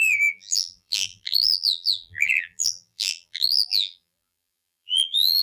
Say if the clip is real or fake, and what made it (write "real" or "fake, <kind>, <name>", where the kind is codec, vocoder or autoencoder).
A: fake, vocoder, BigVGAN v2